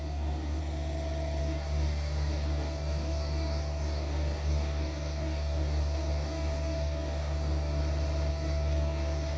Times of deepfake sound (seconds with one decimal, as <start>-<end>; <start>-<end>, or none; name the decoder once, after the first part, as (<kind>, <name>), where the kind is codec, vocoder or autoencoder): 0.0-0.6 (codec, DAC); 1.4-7.8; 8.3-9.4